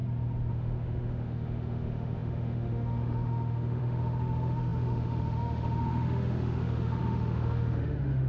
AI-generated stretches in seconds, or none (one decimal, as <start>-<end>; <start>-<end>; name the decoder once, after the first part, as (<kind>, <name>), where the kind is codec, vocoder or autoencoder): 0.5-8.3 (autoencoder, DAC-VAE)